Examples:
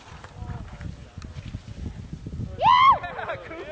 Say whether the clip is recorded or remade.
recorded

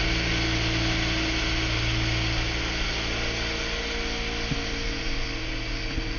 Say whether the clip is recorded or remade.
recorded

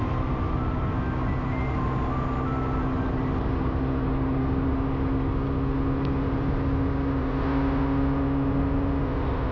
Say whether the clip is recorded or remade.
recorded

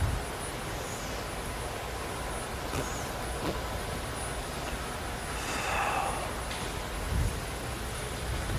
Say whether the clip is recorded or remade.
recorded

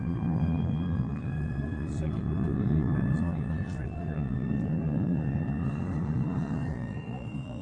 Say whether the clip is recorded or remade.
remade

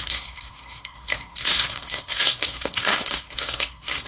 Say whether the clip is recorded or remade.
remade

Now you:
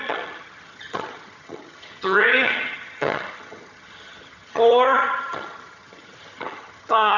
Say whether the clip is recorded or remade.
remade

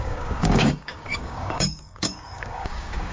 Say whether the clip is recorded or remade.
remade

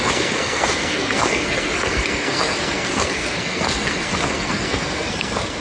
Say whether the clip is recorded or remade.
remade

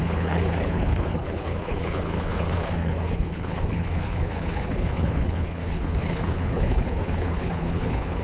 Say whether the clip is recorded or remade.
remade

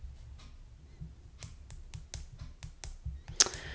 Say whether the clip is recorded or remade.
recorded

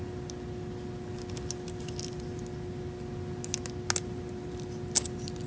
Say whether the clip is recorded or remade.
recorded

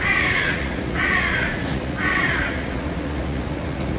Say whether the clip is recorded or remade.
remade